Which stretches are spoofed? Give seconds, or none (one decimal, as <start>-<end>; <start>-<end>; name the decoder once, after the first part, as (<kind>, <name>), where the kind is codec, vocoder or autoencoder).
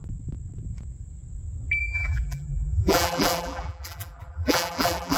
1.8-5.2 (vocoder, BigVGAN v2)